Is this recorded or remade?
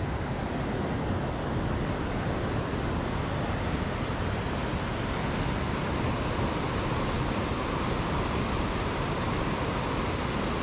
recorded